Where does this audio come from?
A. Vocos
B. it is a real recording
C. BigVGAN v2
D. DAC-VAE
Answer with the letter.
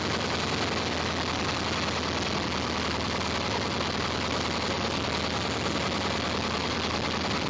B